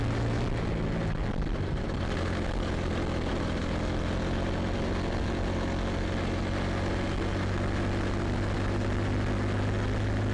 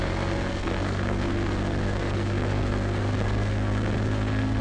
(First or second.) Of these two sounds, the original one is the first